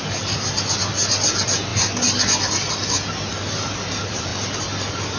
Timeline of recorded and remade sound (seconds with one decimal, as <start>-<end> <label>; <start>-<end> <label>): 0.0-5.2 recorded